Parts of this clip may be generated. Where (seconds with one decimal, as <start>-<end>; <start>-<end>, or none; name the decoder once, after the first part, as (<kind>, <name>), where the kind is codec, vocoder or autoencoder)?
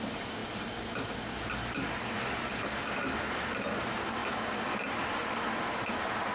none